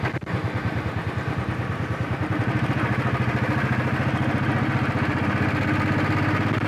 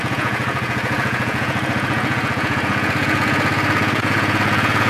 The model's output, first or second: second